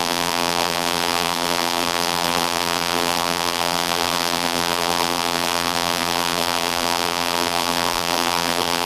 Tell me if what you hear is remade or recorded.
remade